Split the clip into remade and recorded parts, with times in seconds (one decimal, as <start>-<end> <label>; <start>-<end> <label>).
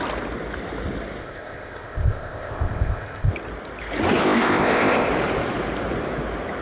0.0-1.2 recorded; 1.2-3.3 remade; 3.3-4.2 recorded; 4.2-5.1 remade; 5.1-6.6 recorded